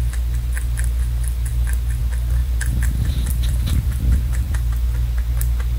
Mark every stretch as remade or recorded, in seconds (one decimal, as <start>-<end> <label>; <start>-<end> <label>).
0.0-2.4 recorded; 2.4-4.7 remade; 4.7-5.8 recorded